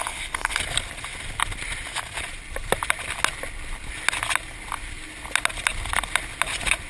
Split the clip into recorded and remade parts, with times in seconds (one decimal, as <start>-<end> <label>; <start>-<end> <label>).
0.0-0.6 remade; 0.6-6.9 recorded